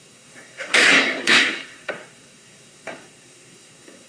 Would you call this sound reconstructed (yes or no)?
yes